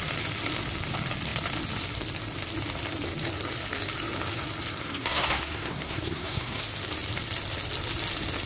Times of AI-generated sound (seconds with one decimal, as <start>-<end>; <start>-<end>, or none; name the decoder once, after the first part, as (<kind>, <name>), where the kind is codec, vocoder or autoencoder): 4.8-6.6 (codec, SNAC)